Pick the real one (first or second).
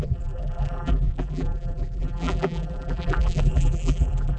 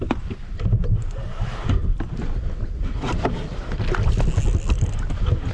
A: second